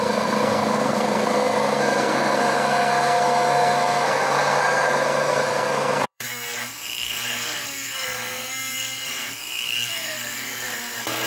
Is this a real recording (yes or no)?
no